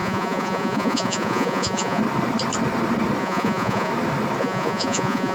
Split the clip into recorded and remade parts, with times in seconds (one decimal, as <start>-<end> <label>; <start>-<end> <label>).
0.0-2.0 remade; 2.0-3.2 recorded; 3.2-3.9 remade; 3.9-4.4 recorded; 4.4-5.3 remade